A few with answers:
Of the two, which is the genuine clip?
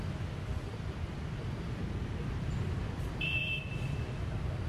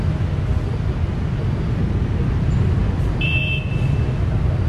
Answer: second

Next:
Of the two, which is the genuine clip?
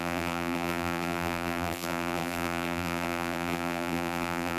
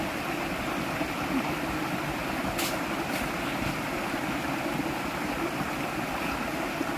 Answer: second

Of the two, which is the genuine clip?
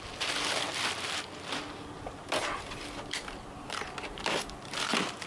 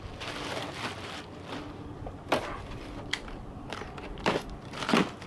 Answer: first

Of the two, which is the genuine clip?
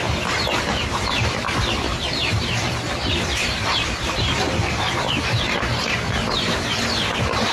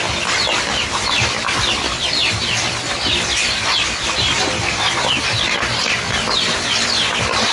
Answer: second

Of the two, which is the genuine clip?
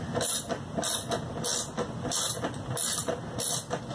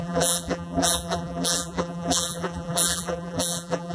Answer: first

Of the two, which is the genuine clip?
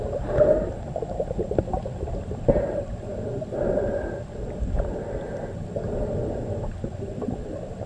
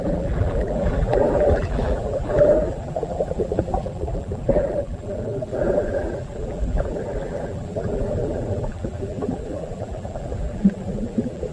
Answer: first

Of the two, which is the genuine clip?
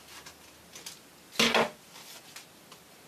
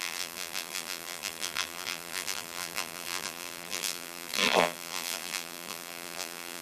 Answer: first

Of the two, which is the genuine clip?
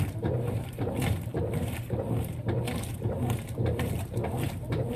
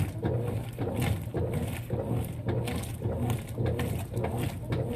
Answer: second